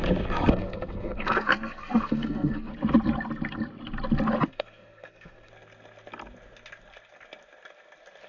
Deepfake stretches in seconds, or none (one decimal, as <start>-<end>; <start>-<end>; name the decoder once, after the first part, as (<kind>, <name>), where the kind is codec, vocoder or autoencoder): 0.5-2.7 (codec, SNAC); 4.5-5.5